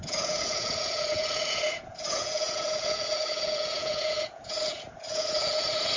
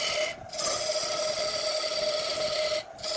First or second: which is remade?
first